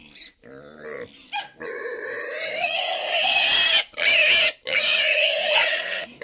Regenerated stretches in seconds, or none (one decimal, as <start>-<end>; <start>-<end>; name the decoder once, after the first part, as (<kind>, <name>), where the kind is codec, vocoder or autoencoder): 2.6-3.1 (vocoder, Vocos); 4.9-6.2